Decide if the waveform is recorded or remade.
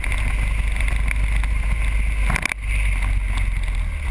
recorded